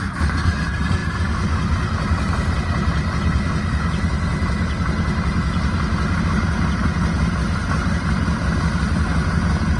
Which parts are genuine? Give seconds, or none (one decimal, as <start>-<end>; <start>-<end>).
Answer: 0.0-9.8